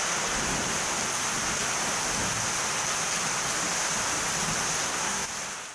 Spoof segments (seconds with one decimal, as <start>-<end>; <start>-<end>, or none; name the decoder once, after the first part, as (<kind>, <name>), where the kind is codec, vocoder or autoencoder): 4.8-5.3 (codec, SNAC)